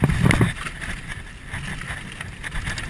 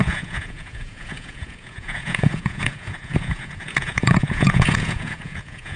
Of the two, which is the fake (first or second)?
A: second